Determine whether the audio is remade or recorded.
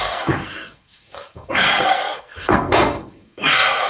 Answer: remade